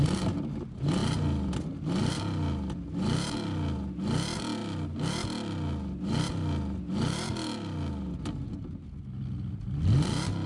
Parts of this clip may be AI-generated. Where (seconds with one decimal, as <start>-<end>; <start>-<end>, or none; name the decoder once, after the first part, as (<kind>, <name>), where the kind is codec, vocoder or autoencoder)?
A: none